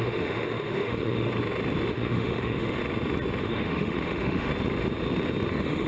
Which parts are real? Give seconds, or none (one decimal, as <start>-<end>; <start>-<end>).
1.3-1.9; 2.8-3.4; 4.5-5.5